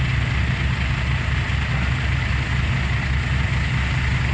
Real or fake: real